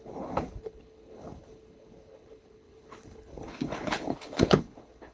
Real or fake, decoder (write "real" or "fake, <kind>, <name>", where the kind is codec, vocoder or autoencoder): fake, codec, HILCodec